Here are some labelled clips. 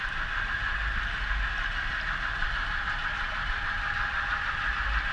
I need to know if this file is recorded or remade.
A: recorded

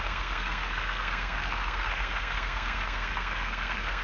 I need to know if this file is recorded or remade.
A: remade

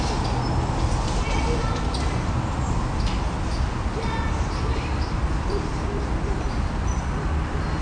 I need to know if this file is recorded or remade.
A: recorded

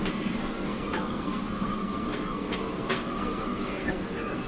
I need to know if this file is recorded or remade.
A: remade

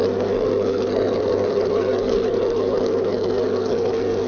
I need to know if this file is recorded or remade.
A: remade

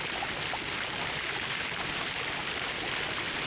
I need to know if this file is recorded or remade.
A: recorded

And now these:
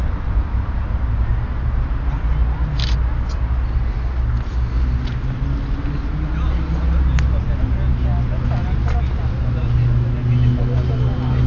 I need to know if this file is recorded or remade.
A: recorded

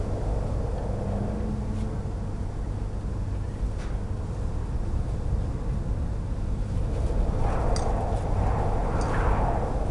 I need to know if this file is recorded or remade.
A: recorded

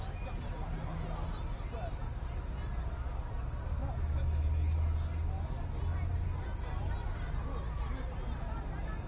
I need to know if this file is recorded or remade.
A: recorded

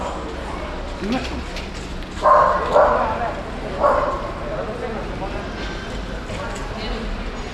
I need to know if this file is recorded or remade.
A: recorded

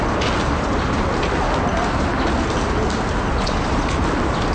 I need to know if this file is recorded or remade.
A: recorded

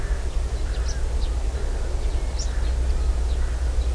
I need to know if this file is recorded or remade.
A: recorded